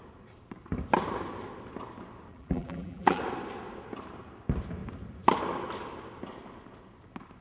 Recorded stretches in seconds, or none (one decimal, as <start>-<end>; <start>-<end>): 0.0-2.3; 3.2-7.4